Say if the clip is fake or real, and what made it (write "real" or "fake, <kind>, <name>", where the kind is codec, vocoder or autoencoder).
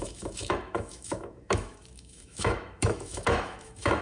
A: fake, autoencoder, DAC-VAE